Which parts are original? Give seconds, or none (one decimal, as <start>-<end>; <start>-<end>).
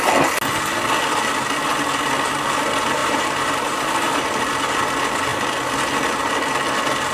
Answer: 0.0-3.0; 4.2-7.1